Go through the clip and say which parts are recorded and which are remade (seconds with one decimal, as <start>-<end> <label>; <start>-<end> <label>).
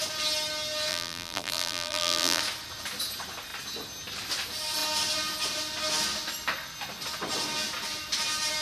0.0-0.9 recorded; 0.9-2.4 remade; 2.4-8.6 recorded